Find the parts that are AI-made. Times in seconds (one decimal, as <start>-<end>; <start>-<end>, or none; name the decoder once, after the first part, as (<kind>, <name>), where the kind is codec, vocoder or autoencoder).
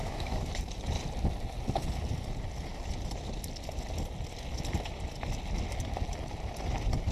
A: 0.0-0.5 (autoencoder, DAC-VAE)